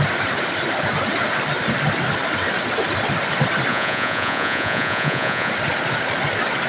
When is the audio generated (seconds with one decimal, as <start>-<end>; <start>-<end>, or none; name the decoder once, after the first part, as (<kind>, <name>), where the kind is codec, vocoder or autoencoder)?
3.7-5.5 (vocoder, Vocos)